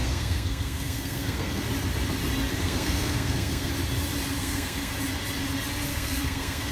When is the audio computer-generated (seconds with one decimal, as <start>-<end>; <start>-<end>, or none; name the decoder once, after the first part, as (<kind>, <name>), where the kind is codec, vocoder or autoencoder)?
0.0-1.7 (codec, SNAC); 2.6-3.7; 4.4-4.9; 5.9-6.7